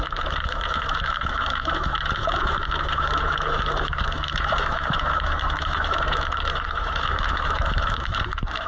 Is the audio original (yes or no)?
no